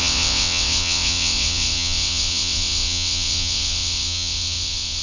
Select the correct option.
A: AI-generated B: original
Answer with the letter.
A